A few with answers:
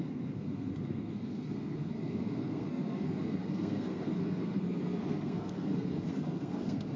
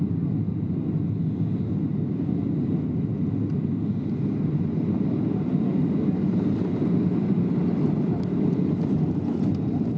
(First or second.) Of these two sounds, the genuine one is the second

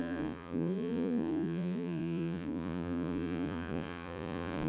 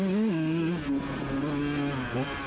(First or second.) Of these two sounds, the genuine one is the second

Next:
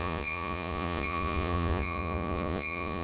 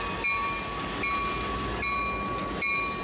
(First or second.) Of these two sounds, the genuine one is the second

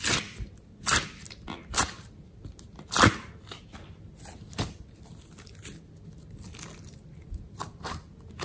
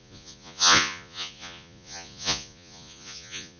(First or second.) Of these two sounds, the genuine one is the first